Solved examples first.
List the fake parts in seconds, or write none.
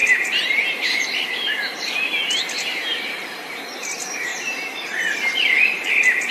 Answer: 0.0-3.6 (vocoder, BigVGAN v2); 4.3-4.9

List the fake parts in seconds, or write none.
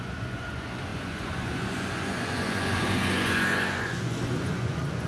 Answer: 0.0-5.1 (vocoder, Vocos)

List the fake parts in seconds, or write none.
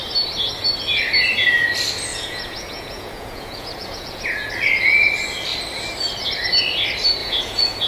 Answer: 2.1-4.5 (vocoder, Vocos); 7.2-7.9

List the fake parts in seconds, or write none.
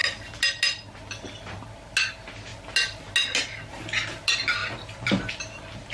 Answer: none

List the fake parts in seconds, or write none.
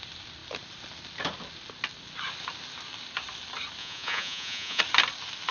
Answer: 3.8-4.8 (vocoder, Vocos)